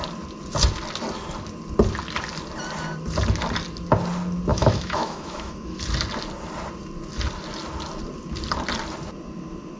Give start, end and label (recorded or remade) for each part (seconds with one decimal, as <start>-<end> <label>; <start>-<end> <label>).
0.0-4.5 recorded; 4.5-5.8 remade; 5.8-9.8 recorded